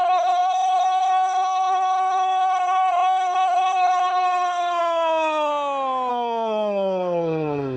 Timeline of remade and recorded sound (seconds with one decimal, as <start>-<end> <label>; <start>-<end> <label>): 0.0-5.5 remade; 5.5-6.1 recorded; 6.1-7.8 remade